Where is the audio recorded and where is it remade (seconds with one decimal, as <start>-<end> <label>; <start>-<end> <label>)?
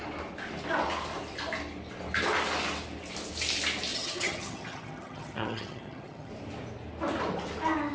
0.0-3.9 recorded; 3.9-6.3 remade; 6.3-7.9 recorded